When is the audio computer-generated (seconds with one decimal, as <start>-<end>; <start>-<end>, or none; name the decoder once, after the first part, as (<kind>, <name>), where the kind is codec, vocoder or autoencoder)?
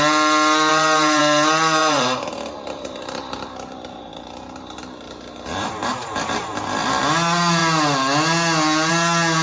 0.7-1.2 (vocoder, BigVGAN v2); 1.8-7.0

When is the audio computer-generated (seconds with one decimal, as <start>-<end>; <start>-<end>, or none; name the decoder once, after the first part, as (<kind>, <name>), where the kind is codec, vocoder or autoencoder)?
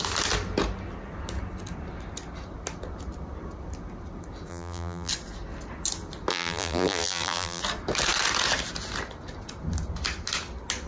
4.5-5.1 (vocoder, BigVGAN v2); 6.3-7.6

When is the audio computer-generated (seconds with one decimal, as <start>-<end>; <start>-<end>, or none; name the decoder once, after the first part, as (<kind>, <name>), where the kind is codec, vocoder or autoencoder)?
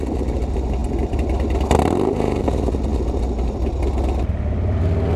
none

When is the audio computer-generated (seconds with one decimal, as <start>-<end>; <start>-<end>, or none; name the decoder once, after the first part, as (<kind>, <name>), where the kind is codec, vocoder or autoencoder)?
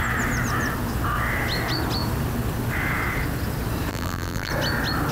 3.9-4.5 (vocoder, BigVGAN v2)